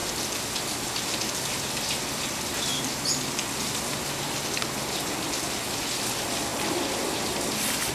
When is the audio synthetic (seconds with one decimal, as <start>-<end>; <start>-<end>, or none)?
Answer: none